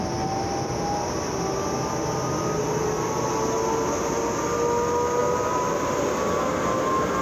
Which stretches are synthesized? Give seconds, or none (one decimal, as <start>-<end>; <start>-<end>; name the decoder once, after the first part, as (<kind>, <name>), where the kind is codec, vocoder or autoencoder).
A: 5.2-6.4 (vocoder, BigVGAN v2)

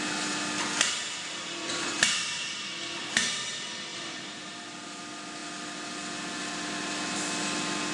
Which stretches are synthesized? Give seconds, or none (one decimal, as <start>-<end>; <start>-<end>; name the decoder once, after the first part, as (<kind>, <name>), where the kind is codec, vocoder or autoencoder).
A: 1.3-2.5 (vocoder, BigVGAN v2); 3.9-5.0